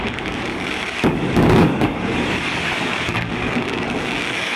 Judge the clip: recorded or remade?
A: remade